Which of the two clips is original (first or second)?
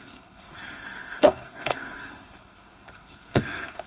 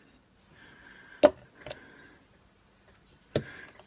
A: second